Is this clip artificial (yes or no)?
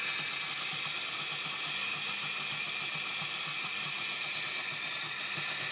no